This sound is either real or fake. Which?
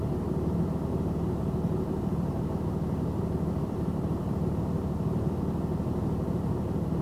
fake